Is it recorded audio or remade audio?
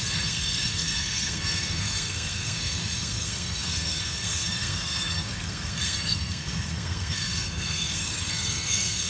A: remade